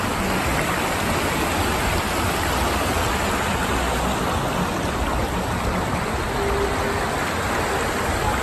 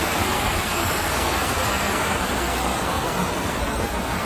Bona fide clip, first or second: first